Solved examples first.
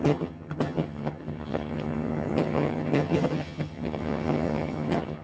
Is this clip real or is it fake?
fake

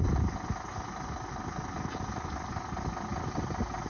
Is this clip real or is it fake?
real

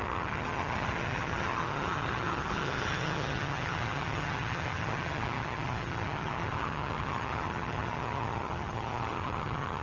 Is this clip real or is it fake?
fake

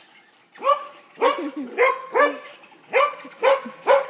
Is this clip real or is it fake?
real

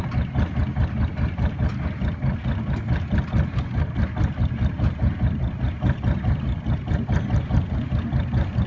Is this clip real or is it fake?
real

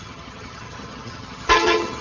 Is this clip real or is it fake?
fake